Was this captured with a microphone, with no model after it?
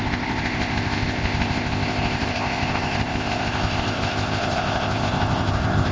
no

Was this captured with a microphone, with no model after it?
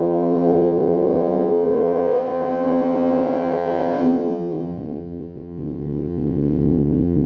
no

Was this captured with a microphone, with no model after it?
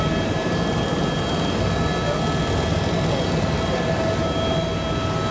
yes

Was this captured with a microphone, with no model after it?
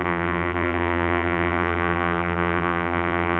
no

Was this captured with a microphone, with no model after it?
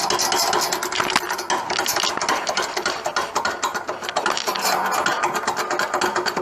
yes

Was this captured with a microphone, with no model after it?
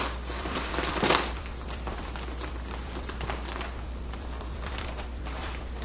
no